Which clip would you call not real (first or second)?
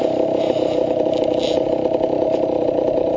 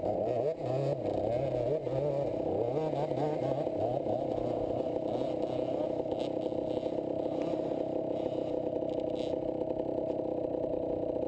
first